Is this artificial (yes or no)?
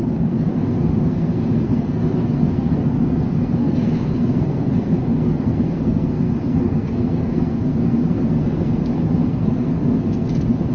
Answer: yes